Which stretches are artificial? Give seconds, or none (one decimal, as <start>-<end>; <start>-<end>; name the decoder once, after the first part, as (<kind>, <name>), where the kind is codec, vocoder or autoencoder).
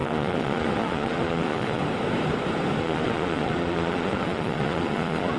0.0-1.8 (vocoder, Vocos); 2.8-5.4